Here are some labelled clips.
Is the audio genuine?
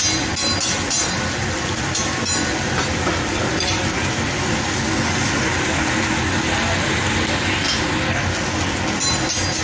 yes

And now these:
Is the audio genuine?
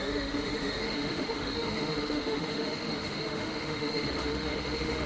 no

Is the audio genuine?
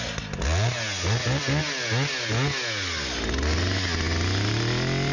yes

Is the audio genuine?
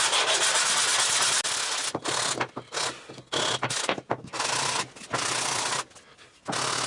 yes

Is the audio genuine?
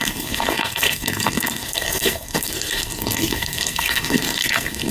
no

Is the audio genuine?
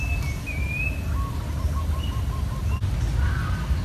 yes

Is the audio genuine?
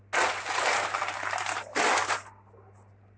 yes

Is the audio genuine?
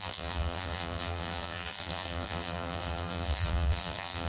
no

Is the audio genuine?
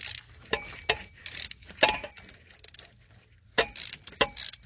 yes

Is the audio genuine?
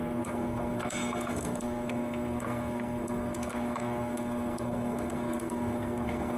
no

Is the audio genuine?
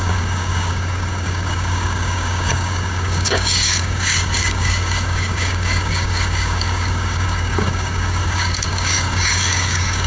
no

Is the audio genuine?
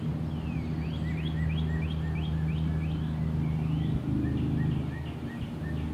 yes